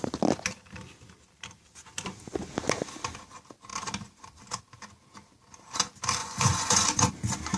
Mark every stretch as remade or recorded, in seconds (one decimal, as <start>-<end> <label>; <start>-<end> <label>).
0.0-6.2 recorded; 6.2-7.1 remade; 7.1-7.6 recorded